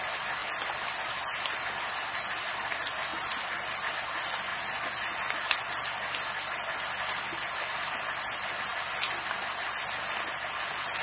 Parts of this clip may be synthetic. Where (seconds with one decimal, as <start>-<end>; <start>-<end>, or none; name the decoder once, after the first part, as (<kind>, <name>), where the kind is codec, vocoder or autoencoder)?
none